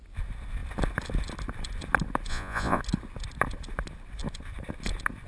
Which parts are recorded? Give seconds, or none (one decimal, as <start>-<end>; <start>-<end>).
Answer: 0.0-2.3; 2.8-5.3